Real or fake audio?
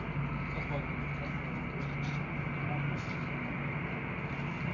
real